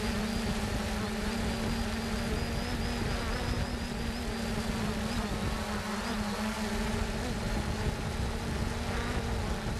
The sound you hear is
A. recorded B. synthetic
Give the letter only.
A